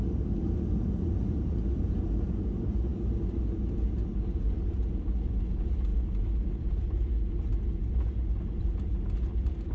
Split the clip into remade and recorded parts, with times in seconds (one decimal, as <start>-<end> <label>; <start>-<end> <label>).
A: 0.0-9.7 recorded